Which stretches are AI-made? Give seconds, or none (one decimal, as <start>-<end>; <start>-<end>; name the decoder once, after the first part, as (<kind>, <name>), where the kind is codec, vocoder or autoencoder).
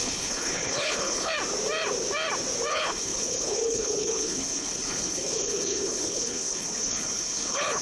0.0-1.3 (codec, HILCodec); 2.7-7.8